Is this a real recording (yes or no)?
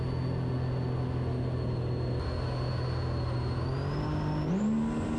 yes